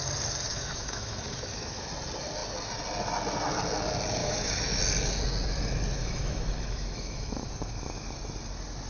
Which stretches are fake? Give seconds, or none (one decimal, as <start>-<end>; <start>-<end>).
0.5-1.9; 4.2-4.8; 6.0-7.5